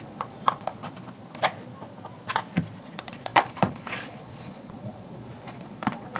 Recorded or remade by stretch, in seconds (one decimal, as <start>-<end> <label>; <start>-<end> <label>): 0.0-0.8 remade; 0.8-2.8 recorded; 2.8-6.2 remade